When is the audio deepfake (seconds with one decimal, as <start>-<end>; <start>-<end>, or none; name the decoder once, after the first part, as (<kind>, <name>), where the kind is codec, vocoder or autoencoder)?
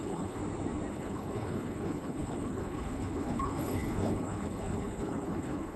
0.0-0.4 (codec, HILCodec); 0.9-5.8